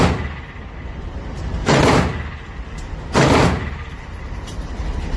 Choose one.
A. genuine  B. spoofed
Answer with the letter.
A